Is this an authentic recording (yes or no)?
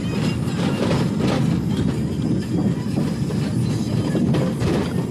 yes